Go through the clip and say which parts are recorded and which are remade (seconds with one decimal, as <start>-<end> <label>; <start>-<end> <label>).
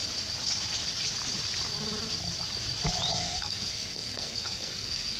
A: 0.0-3.1 recorded; 3.1-5.2 remade